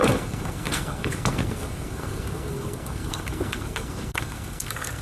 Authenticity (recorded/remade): remade